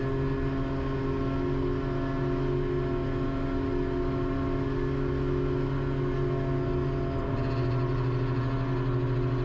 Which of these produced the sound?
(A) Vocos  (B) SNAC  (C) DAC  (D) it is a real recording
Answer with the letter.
D